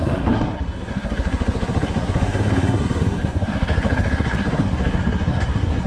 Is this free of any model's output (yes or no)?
no